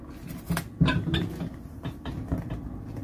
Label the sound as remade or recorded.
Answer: recorded